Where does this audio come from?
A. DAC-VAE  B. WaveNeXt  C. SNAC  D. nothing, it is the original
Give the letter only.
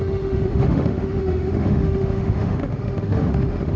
A